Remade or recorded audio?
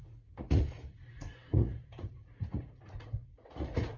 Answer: remade